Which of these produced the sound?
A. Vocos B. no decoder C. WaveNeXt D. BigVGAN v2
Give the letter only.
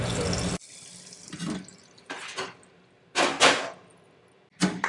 B